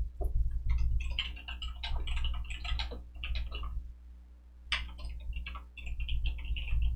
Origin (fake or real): real